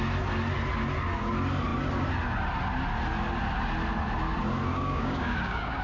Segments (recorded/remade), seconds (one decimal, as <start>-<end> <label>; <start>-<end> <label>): 0.0-4.7 recorded; 4.7-5.8 remade